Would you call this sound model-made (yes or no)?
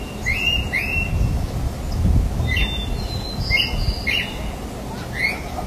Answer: no